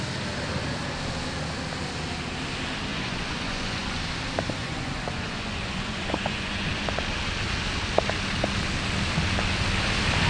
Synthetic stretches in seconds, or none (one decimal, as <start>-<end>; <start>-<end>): 2.9-4.0; 4.6-6.7